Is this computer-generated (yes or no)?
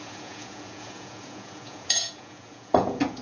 yes